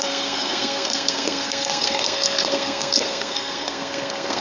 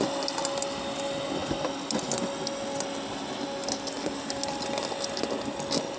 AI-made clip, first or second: first